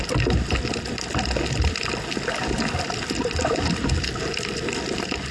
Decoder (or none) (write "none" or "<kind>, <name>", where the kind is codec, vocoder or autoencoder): none